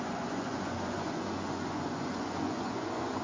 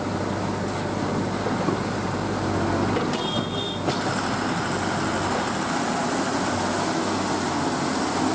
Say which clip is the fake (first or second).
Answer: first